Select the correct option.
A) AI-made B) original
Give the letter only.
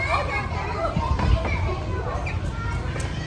B